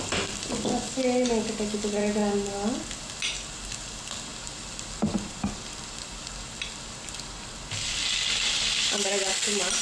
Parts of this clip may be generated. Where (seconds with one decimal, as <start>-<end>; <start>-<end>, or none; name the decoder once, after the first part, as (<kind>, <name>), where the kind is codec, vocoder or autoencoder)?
none